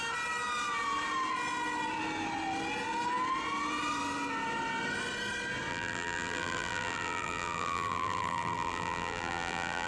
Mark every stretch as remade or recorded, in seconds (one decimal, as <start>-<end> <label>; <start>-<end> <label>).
0.0-5.7 recorded; 5.7-9.9 remade